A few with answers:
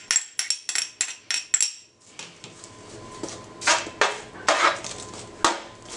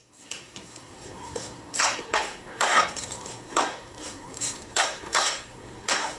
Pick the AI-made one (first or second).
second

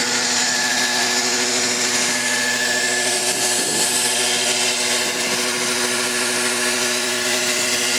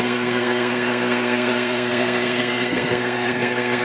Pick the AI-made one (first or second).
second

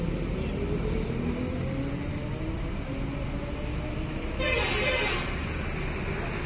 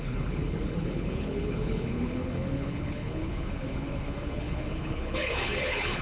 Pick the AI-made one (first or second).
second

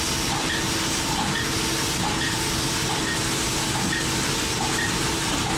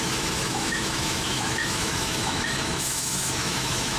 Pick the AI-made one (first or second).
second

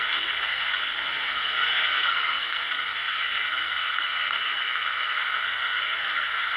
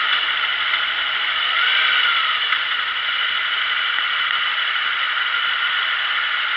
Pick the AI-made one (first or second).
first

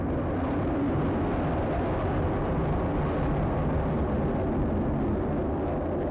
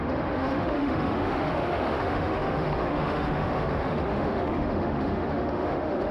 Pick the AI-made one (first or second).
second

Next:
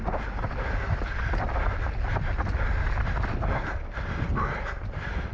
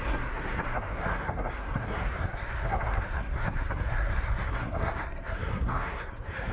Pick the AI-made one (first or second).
second